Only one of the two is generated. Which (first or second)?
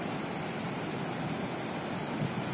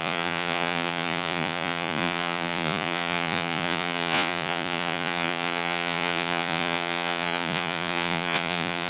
second